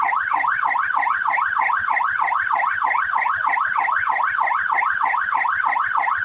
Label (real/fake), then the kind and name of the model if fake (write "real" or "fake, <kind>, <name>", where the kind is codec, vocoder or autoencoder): real